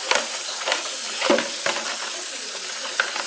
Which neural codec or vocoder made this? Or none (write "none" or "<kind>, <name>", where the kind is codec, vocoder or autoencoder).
none